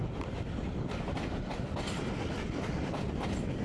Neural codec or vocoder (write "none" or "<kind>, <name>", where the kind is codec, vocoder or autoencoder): none